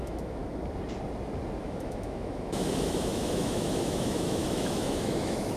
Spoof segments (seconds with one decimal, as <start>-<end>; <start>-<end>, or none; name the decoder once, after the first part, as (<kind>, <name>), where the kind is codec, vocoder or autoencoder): 0.0-0.4 (autoencoder, DAC-VAE); 1.6-5.6